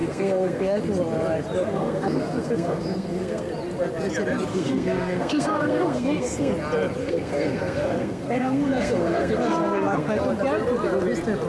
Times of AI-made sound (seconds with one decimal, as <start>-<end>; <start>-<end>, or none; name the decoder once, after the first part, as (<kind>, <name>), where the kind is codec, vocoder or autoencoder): 0.0-0.8 (codec, SNAC); 1.6-3.5; 4.5-6.5; 7.0-10.2